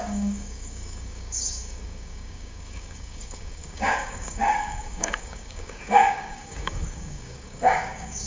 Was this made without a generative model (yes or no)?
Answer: no